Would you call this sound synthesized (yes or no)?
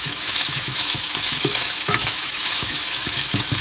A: yes